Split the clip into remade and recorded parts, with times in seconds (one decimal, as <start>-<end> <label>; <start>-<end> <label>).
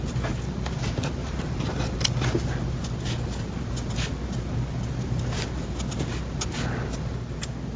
0.0-1.2 recorded; 1.2-1.8 remade; 1.8-7.8 recorded